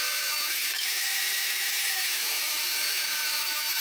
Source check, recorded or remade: remade